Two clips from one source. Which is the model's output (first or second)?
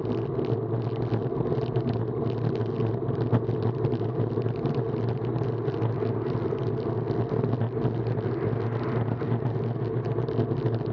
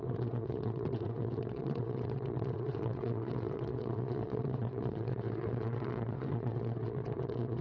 second